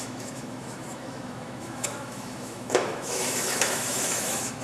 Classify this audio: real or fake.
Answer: fake